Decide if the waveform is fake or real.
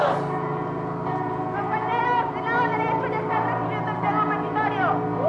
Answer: real